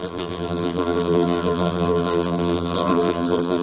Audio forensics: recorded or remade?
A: remade